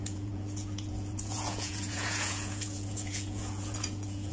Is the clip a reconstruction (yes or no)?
yes